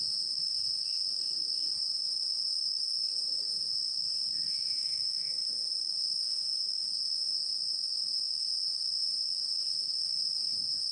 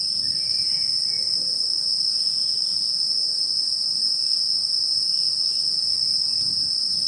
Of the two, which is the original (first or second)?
second